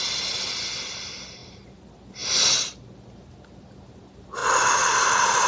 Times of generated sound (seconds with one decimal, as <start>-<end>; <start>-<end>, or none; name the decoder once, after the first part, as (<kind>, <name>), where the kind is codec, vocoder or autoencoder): none